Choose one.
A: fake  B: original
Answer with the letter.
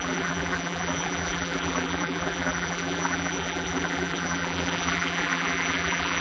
A